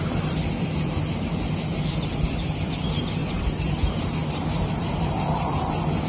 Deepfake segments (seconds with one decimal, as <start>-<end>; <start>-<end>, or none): 0.0-3.2; 4.7-6.1